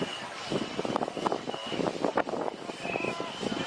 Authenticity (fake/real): real